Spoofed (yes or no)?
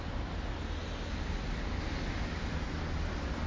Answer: no